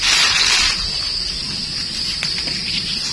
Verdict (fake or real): real